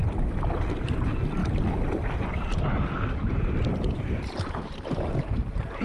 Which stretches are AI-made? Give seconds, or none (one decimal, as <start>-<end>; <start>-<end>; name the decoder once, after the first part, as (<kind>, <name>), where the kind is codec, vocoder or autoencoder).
3.7-5.8 (vocoder, BigVGAN v2)